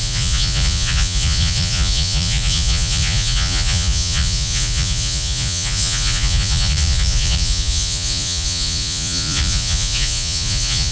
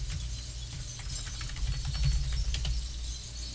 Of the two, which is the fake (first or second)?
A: first